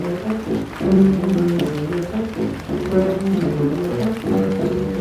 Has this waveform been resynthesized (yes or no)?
yes